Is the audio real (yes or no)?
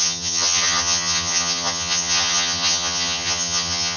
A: no